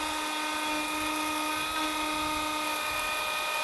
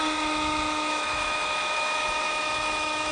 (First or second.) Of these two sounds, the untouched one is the first